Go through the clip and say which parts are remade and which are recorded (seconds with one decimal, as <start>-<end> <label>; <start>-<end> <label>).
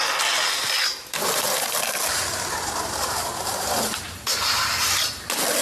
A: 0.0-0.9 recorded; 0.9-4.3 remade; 4.3-5.6 recorded